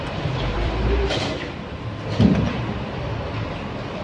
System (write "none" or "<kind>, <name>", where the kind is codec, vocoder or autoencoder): vocoder, BigVGAN v2